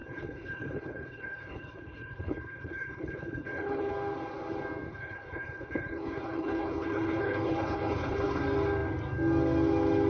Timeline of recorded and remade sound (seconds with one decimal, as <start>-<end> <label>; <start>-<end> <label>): 0.0-3.9 remade; 3.9-4.9 recorded; 4.9-8.4 remade; 8.4-10.1 recorded